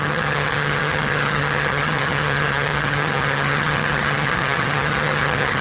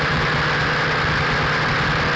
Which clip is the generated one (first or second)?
first